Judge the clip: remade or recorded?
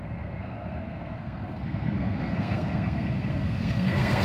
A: remade